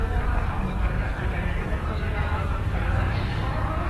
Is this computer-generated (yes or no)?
yes